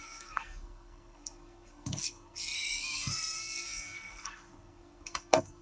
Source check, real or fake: fake